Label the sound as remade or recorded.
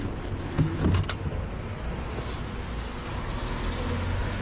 recorded